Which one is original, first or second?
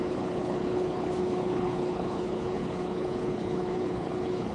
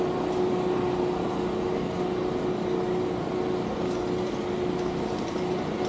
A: second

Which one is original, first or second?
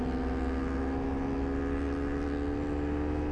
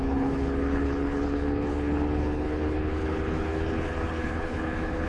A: first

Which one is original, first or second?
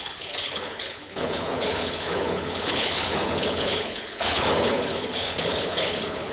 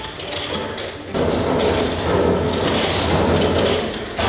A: second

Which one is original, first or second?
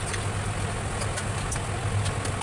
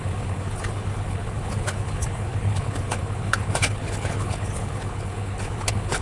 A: first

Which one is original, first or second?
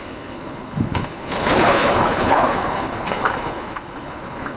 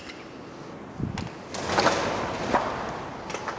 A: second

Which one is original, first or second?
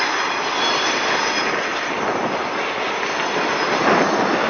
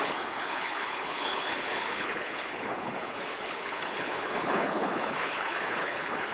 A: first